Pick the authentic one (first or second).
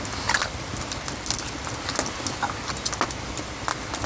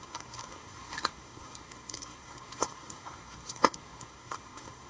first